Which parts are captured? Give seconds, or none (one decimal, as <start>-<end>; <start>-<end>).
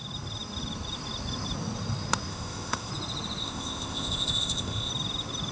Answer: 0.0-2.3; 2.9-3.4; 4.9-5.5